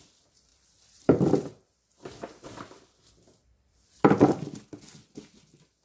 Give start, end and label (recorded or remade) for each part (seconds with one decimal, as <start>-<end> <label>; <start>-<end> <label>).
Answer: 0.0-0.5 recorded; 0.5-4.0 remade; 4.0-5.8 recorded